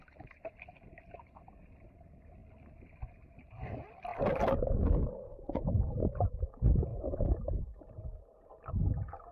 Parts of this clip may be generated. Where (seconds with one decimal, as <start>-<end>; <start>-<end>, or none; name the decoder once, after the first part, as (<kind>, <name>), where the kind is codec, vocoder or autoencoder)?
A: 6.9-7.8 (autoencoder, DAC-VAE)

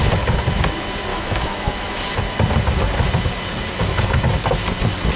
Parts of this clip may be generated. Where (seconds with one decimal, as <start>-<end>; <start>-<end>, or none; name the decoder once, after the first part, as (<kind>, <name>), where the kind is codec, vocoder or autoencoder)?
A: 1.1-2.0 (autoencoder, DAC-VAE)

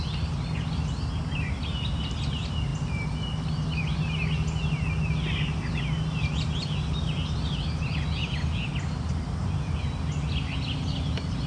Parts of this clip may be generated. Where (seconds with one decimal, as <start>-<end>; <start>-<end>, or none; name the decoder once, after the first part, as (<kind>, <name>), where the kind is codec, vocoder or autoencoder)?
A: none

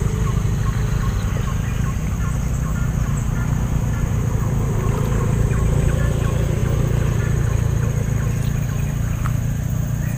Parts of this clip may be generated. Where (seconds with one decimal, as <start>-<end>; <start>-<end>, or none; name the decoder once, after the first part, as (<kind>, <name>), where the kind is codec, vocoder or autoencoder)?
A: none